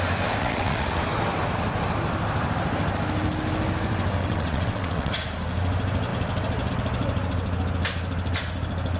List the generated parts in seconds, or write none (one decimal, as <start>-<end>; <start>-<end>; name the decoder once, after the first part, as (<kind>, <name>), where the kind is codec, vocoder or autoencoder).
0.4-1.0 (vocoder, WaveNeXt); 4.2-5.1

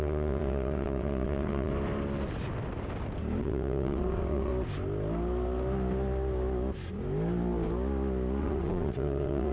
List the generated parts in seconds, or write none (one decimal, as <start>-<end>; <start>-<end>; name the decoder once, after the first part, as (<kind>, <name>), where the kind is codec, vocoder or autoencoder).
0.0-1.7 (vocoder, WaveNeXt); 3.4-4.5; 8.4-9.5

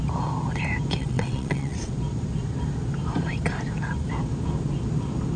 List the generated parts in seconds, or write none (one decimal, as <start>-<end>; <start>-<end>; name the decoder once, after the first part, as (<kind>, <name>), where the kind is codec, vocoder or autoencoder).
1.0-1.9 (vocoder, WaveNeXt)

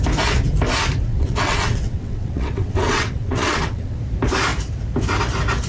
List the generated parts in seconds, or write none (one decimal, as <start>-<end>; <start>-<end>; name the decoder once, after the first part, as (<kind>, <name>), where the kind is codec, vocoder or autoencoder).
1.1-4.0 (vocoder, WaveNeXt)

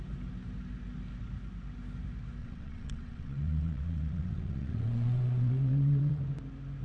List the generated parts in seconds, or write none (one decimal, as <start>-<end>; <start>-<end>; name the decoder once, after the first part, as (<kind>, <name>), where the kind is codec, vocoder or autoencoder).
2.4-6.2 (vocoder, WaveNeXt)

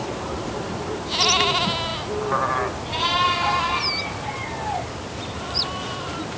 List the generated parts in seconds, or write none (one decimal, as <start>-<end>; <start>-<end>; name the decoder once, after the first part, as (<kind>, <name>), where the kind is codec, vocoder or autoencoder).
none

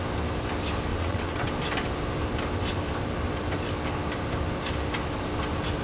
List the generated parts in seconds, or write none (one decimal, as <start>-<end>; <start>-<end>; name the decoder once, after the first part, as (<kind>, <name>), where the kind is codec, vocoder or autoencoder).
0.9-1.5 (vocoder, WaveNeXt)

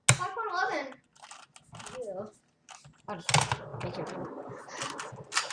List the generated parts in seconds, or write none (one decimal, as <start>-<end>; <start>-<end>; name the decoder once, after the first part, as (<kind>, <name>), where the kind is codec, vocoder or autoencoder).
none